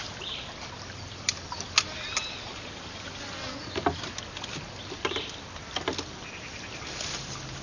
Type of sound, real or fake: real